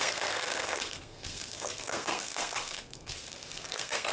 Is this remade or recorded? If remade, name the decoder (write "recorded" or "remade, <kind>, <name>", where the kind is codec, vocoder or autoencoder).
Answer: remade, codec, SNAC